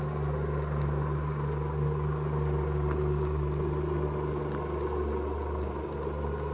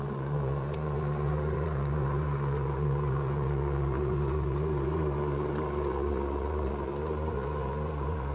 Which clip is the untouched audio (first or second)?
first